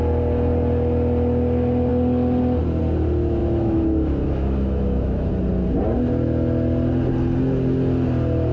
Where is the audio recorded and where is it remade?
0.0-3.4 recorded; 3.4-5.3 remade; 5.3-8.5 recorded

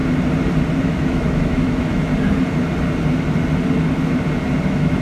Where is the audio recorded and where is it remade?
0.0-0.8 recorded; 0.8-2.1 remade; 2.1-4.6 recorded; 4.6-5.0 remade

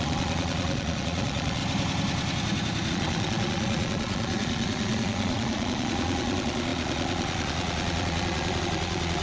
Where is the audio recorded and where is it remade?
0.0-1.6 remade; 1.6-2.9 recorded; 2.9-9.2 remade

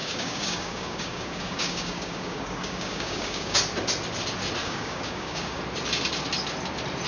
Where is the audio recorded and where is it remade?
0.0-3.6 remade; 3.6-4.6 recorded; 4.6-5.6 remade; 5.6-7.1 recorded

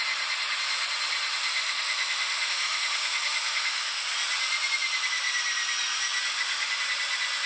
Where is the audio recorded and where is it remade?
0.0-1.5 recorded; 1.5-4.0 remade; 4.0-6.3 recorded; 6.3-6.8 remade; 6.8-7.5 recorded